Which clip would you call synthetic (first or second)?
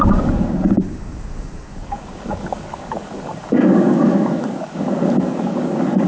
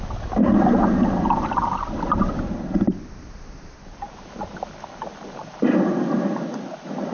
first